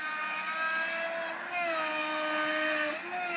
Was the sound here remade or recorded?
recorded